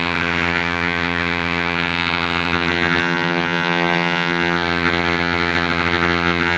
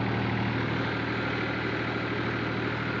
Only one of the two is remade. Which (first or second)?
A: first